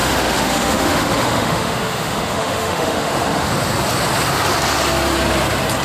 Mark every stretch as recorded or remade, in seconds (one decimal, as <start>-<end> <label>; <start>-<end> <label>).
0.0-3.5 remade; 3.5-5.8 recorded